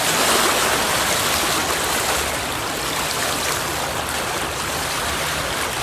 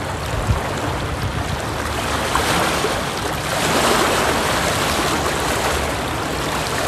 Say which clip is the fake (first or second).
first